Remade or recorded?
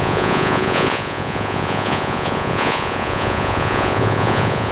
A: remade